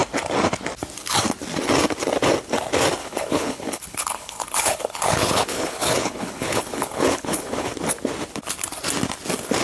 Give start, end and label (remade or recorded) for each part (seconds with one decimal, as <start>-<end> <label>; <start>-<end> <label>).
0.0-3.0 recorded; 3.0-7.7 remade; 7.7-9.6 recorded